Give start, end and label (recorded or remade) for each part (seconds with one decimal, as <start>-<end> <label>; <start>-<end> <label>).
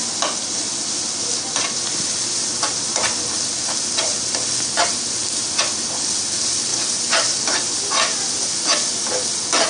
0.0-9.7 recorded